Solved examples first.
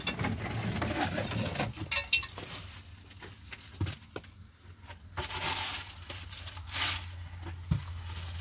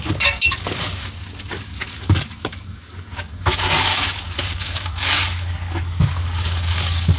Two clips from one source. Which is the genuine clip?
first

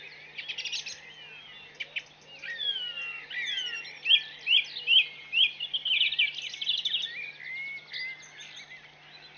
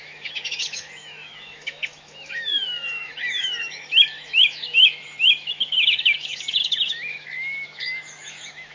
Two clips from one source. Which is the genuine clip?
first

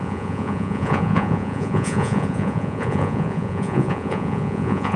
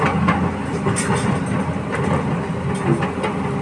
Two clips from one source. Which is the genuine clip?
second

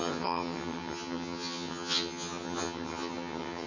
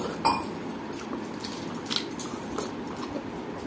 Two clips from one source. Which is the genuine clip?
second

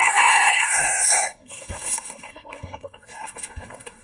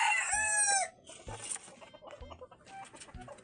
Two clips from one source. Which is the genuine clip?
second